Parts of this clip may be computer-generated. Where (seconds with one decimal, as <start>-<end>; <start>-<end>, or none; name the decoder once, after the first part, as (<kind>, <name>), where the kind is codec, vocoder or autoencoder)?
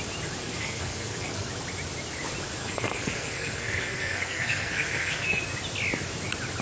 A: 0.4-1.5 (codec, SNAC); 2.6-5.4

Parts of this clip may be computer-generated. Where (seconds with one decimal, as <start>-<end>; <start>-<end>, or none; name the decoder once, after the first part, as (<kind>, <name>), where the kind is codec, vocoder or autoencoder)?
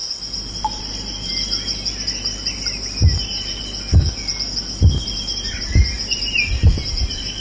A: none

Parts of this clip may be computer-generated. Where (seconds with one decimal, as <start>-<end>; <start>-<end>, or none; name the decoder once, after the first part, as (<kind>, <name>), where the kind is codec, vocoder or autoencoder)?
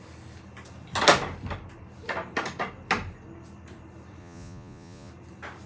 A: 4.2-5.1 (vocoder, Vocos)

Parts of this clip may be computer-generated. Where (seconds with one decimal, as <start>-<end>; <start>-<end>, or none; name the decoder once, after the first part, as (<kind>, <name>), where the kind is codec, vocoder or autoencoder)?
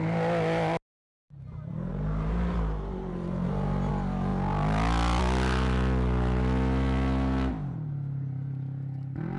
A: 1.9-3.9 (vocoder, BigVGAN v2)